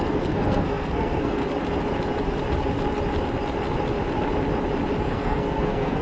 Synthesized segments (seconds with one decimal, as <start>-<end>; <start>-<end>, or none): 0.0-1.4; 5.0-6.0